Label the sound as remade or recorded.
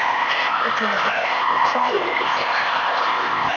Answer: remade